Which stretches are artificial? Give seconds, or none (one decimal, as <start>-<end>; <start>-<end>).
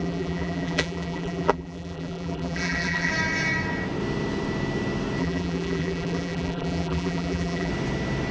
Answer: 0.0-3.1; 5.2-7.7